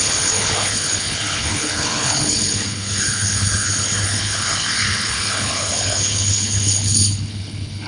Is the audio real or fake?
fake